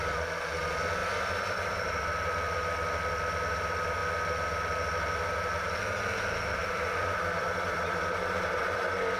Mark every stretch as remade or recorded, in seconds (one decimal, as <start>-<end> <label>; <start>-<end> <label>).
0.0-1.0 recorded; 1.0-1.9 remade; 1.9-6.6 recorded; 6.6-9.2 remade